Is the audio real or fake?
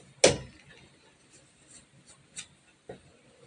real